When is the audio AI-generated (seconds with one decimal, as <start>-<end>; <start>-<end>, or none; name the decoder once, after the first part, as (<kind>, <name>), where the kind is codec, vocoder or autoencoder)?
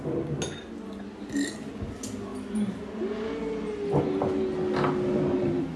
none